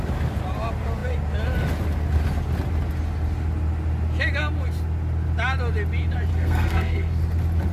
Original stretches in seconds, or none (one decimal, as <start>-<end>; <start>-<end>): 0.0-6.3; 7.2-7.7